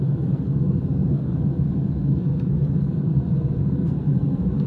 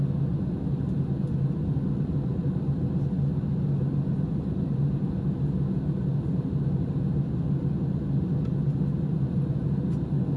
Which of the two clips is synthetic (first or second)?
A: first